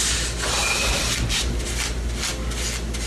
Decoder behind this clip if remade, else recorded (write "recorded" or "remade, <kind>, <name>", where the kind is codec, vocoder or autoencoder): recorded